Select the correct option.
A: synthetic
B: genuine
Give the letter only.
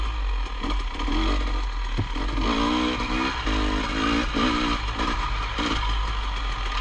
B